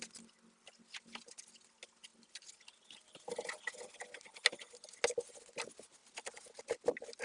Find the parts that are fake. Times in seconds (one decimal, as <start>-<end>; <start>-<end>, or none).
none

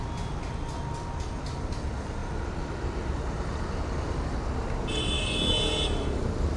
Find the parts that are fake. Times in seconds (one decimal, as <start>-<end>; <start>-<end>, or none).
none

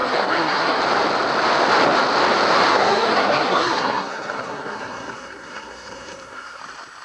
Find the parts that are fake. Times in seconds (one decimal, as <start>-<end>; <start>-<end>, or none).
0.0-0.8; 2.7-6.6

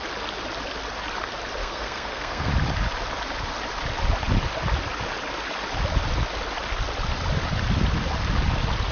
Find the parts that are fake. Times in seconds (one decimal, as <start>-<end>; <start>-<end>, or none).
1.6-2.5

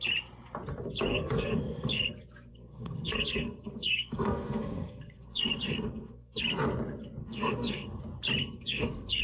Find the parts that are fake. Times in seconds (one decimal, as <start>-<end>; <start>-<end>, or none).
1.1-2.1; 2.5-6.4; 7.2-8.0; 8.4-9.2